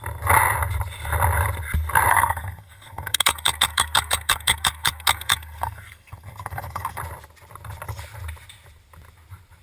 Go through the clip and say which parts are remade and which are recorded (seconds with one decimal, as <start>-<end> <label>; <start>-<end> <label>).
0.0-2.1 recorded; 2.1-7.0 remade; 7.0-9.6 recorded